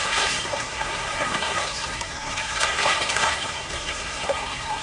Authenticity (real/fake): fake